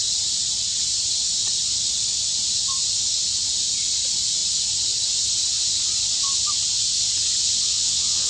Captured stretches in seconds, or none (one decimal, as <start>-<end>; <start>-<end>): 0.0-7.6